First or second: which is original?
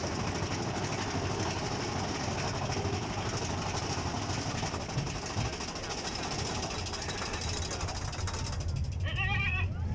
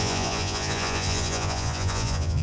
first